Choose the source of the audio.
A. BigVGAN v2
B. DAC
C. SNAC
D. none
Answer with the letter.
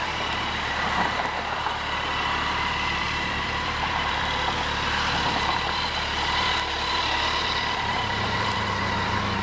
A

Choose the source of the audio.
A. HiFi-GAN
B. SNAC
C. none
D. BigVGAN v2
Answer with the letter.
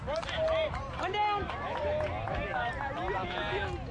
C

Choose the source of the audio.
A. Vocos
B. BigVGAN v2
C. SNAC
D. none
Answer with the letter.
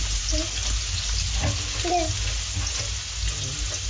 D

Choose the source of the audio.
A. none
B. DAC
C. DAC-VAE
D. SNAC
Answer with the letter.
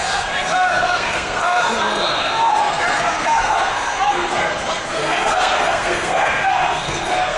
D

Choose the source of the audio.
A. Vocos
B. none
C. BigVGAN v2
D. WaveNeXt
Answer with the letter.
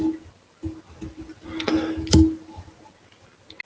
B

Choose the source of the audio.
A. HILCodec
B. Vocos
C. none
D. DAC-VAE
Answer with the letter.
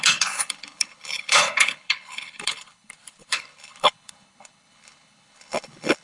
A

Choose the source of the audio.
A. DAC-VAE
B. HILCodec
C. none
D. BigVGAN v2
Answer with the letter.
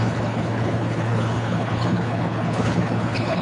B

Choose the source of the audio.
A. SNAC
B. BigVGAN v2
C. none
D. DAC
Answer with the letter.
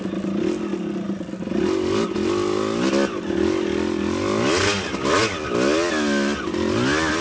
C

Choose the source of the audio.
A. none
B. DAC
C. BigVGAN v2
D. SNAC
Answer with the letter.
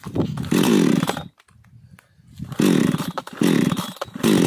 A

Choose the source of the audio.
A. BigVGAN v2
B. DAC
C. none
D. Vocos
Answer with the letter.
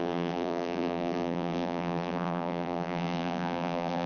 A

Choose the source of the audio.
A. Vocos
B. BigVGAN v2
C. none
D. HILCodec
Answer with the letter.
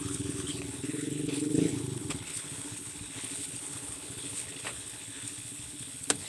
D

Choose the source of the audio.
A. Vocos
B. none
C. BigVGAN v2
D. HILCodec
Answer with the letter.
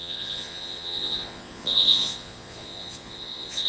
A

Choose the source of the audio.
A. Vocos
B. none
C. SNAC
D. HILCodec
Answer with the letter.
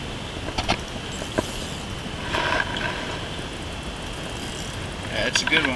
B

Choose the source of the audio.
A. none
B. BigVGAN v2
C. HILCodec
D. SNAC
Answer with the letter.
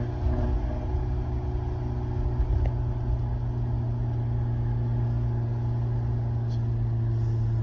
A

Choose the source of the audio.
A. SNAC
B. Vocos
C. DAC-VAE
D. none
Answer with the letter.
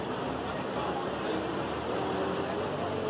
D